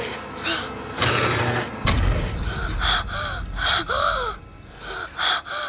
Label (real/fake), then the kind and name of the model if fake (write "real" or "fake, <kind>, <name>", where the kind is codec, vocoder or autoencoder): real